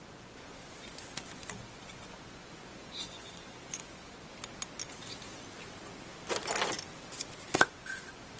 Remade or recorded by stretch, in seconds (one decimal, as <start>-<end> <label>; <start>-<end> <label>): 0.0-4.3 remade; 4.3-7.6 recorded; 7.6-8.4 remade